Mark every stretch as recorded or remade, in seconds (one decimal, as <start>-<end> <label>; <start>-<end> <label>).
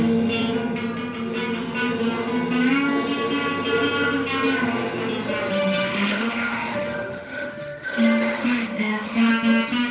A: 0.0-5.5 recorded; 5.5-9.3 remade; 9.3-9.9 recorded